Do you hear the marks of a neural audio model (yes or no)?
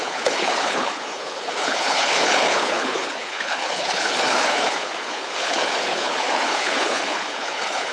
yes